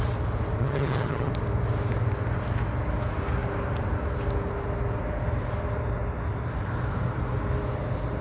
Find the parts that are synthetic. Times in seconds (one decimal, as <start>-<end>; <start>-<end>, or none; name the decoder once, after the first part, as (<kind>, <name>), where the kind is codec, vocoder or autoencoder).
0.6-1.3 (vocoder, HiFi-GAN)